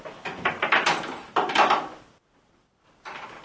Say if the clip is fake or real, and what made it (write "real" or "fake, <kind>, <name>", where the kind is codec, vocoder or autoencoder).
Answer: real